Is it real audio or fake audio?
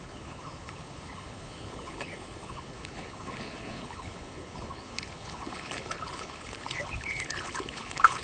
fake